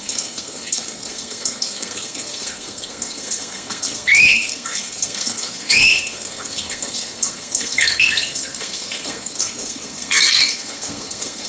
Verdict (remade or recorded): remade